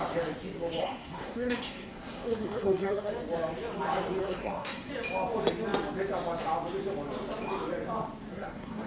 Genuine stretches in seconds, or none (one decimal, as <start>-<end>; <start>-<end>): 0.0-0.8; 3.1-4.2; 4.9-8.3